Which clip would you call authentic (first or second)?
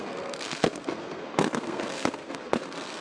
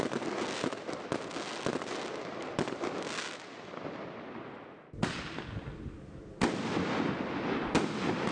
second